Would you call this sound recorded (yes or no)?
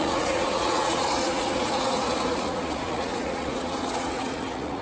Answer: no